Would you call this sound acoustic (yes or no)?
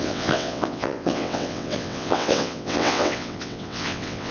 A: no